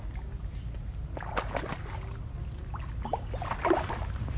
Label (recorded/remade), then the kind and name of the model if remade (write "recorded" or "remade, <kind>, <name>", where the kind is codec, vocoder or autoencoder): recorded